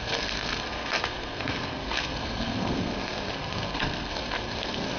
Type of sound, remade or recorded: remade